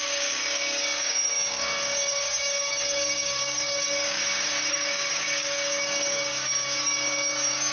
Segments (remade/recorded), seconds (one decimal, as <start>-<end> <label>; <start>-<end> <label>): 0.0-4.2 remade; 4.2-4.7 recorded; 4.7-7.7 remade